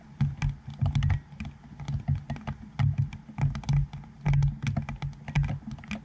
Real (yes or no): yes